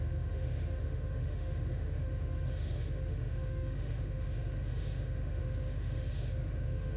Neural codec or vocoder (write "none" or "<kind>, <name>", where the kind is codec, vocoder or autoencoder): autoencoder, DAC-VAE